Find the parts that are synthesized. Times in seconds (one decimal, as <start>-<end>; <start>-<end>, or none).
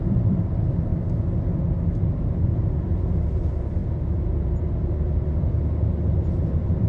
0.0-0.9; 2.0-6.9